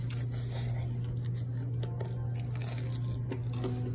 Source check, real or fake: real